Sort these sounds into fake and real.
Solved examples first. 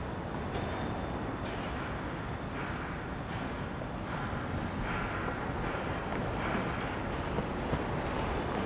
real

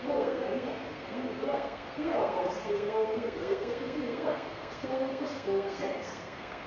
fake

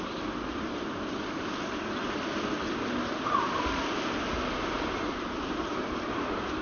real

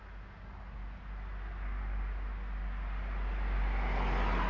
real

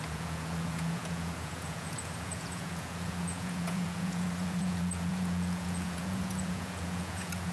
fake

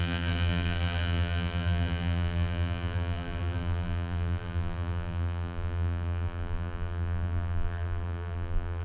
fake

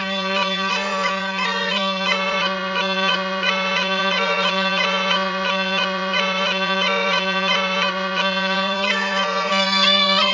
fake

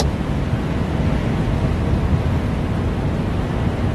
real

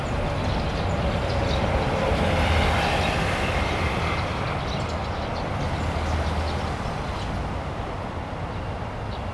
real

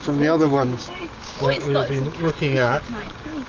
fake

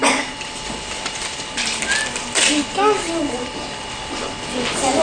real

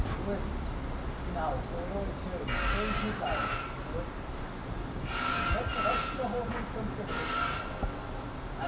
real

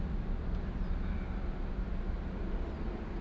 real